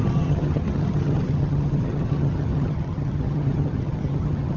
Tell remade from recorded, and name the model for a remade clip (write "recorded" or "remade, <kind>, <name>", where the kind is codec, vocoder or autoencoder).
remade, vocoder, HiFi-GAN